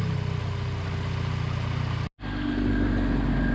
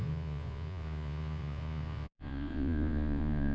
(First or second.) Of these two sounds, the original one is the first